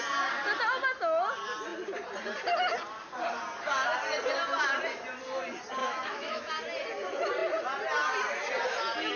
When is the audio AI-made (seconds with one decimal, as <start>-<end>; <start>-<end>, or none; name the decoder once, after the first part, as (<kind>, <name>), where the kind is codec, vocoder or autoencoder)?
5.8-6.5 (autoencoder, DAC-VAE)